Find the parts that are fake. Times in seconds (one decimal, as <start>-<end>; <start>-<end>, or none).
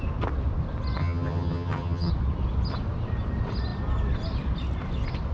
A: 1.0-2.1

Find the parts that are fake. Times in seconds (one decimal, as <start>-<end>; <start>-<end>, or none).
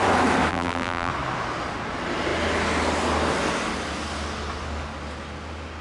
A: 0.5-1.1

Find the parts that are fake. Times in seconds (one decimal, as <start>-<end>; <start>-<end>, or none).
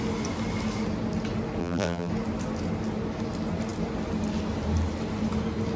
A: 1.6-2.1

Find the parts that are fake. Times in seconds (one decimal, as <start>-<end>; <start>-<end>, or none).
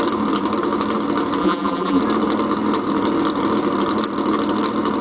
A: 1.4-2.0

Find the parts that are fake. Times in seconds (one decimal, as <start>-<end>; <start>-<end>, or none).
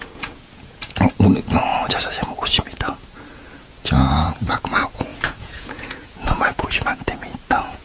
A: 0.0-7.8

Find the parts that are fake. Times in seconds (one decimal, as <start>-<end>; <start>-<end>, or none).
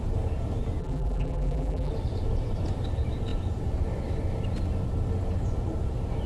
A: 0.8-1.9